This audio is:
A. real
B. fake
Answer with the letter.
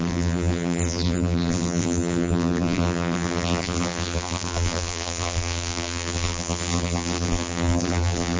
B